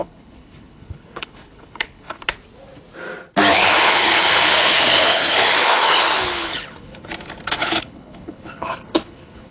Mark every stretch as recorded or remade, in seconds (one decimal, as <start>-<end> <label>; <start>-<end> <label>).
0.0-2.2 remade; 2.2-3.5 recorded; 3.5-7.1 remade; 7.1-7.6 recorded; 7.6-9.5 remade